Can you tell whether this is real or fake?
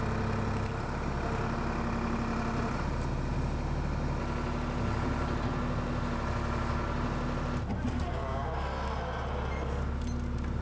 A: real